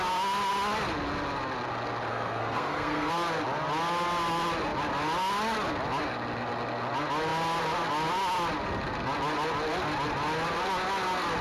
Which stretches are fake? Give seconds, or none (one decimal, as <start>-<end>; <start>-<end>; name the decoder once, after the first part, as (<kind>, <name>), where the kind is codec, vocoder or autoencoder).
2.1-3.1 (codec, SNAC)